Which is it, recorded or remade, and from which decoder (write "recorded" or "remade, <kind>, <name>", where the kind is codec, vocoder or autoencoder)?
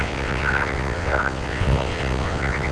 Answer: remade, vocoder, WaveNeXt